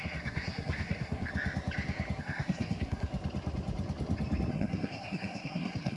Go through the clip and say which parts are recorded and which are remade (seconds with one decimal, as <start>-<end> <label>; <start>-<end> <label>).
0.0-1.3 remade; 1.3-2.2 recorded; 2.2-3.1 remade; 3.1-4.5 recorded; 4.5-6.0 remade